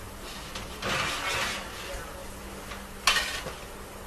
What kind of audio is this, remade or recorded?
recorded